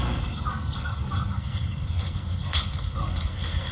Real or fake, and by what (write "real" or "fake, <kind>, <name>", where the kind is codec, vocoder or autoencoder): fake, codec, SNAC